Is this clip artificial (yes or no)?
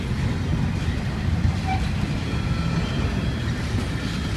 no